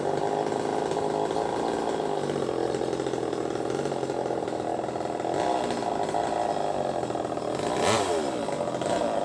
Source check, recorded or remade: recorded